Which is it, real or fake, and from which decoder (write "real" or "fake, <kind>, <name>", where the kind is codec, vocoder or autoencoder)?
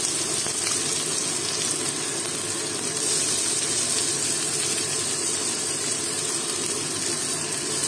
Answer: real